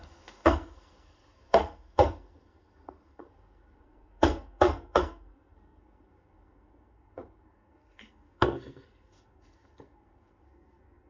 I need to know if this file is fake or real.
fake